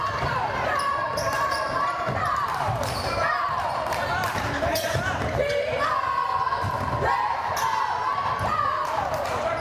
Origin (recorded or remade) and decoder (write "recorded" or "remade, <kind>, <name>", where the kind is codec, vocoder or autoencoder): remade, vocoder, BigVGAN v2